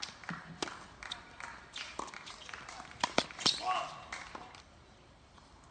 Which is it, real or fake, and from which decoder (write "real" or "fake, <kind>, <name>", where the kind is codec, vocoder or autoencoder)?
real